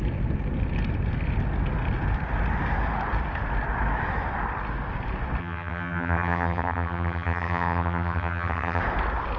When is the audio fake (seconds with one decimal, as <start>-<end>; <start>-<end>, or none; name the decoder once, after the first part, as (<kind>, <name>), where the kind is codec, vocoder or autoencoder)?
5.4-8.8 (vocoder, HiFi-GAN)